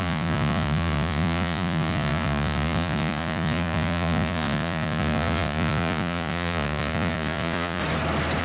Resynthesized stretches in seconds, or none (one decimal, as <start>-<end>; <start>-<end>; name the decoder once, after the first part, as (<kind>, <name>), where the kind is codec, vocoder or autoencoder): 0.0-7.8 (vocoder, Vocos)